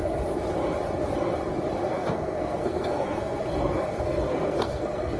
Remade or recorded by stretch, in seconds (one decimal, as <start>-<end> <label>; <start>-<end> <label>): 0.0-1.8 recorded; 1.8-5.2 remade